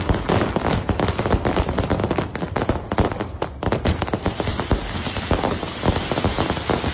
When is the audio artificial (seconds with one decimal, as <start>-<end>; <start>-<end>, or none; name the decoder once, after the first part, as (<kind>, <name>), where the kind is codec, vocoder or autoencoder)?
none